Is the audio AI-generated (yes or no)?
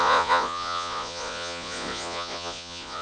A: yes